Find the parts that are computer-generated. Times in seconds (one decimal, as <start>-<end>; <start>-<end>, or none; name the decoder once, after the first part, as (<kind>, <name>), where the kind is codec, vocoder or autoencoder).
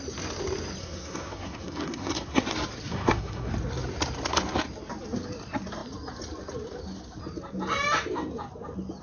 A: 0.8-2.4 (codec, SNAC); 2.9-3.5